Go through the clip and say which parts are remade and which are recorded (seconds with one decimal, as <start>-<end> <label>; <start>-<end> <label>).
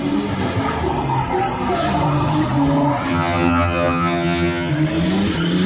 0.0-3.1 recorded; 3.1-4.7 remade; 4.7-5.7 recorded